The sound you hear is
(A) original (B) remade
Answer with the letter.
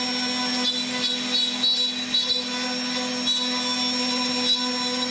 A